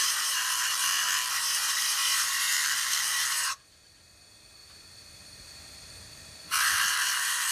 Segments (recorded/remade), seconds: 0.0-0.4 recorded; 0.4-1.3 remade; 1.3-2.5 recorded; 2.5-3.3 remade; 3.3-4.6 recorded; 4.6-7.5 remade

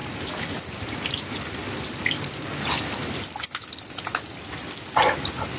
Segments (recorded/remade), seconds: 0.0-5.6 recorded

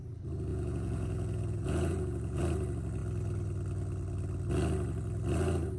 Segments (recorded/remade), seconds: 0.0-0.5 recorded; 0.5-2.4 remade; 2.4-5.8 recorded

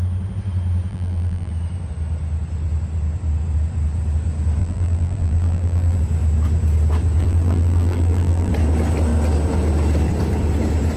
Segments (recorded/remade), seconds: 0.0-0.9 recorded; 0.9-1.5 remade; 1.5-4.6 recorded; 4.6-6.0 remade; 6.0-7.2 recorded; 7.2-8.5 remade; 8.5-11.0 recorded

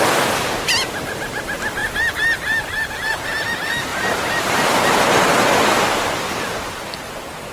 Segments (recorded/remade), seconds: 0.0-3.9 recorded; 3.9-4.5 remade; 4.5-5.3 recorded; 5.3-5.9 remade; 5.9-7.5 recorded

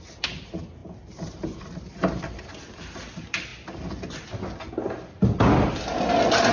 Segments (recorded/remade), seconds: 0.0-6.5 recorded

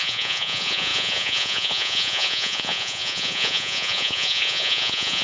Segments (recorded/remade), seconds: 0.0-5.2 remade

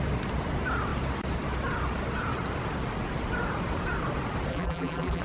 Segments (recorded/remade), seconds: 0.0-4.5 recorded; 4.5-5.2 remade